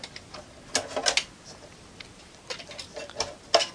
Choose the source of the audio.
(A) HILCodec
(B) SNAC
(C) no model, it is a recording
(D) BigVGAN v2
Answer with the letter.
C